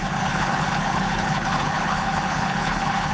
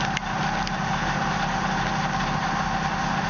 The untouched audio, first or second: second